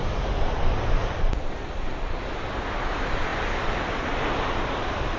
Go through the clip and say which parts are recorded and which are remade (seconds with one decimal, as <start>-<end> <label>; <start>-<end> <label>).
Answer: 0.0-2.2 remade; 2.2-5.2 recorded